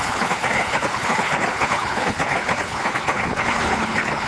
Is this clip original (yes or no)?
no